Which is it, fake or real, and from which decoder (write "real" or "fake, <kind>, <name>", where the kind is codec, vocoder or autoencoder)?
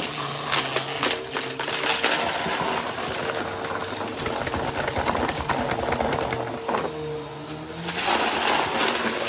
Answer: real